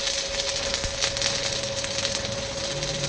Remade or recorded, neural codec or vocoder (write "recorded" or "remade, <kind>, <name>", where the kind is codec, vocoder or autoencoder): recorded